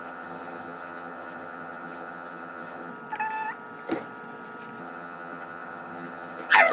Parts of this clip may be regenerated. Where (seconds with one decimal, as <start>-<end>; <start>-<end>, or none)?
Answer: 0.0-2.9; 4.8-6.7